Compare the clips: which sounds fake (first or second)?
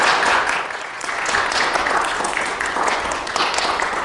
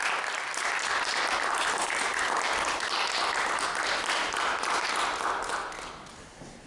first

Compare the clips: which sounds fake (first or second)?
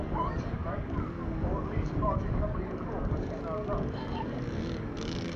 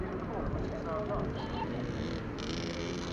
first